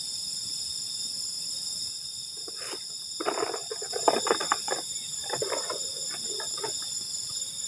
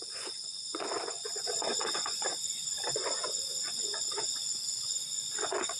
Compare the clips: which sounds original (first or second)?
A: first